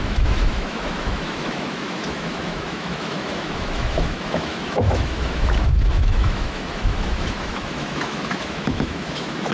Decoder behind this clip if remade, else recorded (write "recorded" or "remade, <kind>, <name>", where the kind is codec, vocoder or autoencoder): remade, autoencoder, DAC-VAE